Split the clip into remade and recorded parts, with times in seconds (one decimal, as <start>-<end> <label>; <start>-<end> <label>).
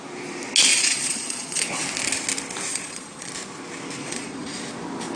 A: 0.0-0.7 recorded; 0.7-1.7 remade; 1.7-2.7 recorded; 2.7-3.3 remade; 3.3-4.0 recorded; 4.0-4.6 remade; 4.6-5.2 recorded